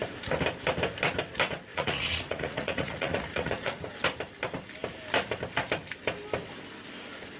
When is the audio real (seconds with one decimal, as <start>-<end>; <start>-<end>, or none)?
0.0-1.7; 3.8-7.4